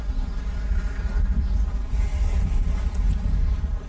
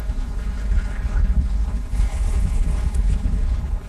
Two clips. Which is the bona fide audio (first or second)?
first